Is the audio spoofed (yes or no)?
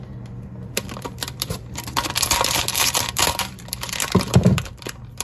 yes